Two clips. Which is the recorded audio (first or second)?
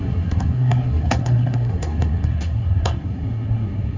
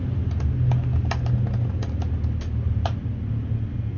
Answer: second